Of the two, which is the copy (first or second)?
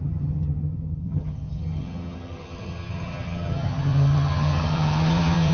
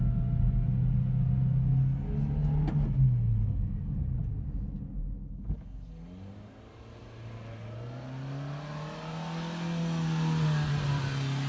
first